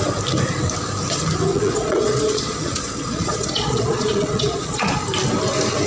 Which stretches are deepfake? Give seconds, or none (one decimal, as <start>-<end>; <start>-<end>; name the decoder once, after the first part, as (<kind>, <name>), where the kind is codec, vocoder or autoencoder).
1.5-5.0 (vocoder, Vocos)